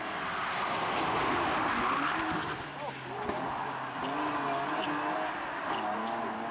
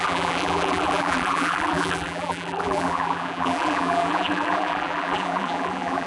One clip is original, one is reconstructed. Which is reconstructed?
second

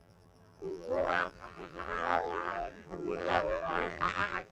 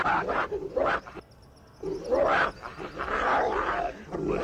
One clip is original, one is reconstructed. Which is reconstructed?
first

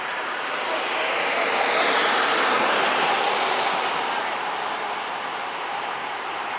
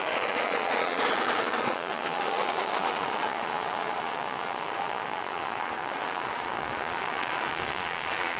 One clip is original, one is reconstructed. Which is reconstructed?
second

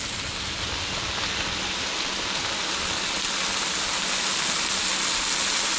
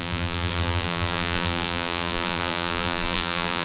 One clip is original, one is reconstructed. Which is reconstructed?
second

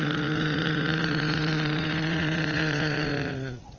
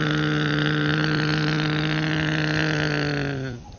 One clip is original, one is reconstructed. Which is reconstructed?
first